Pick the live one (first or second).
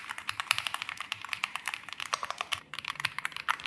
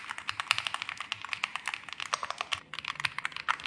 second